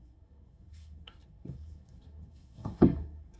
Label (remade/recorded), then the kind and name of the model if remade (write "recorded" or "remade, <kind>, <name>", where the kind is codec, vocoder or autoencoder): remade, codec, SNAC